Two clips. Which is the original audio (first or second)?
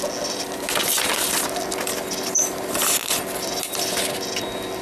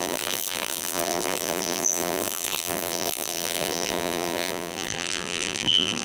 first